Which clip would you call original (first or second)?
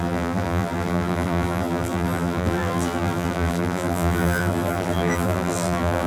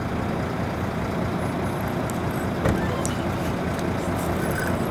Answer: second